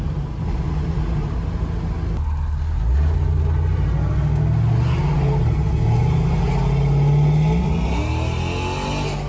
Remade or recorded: recorded